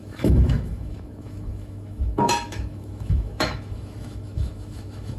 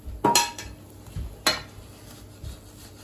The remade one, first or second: first